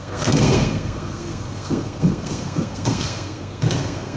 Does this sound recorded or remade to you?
remade